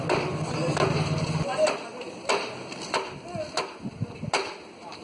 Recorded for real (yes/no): yes